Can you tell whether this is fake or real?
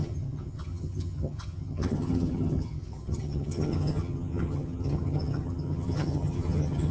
fake